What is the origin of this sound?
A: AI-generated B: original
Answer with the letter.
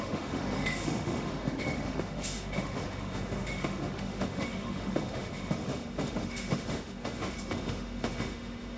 A